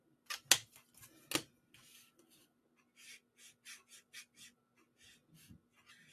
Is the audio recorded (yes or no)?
yes